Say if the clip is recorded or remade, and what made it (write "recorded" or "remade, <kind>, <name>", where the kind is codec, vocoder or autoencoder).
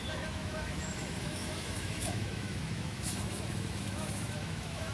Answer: remade, autoencoder, DAC-VAE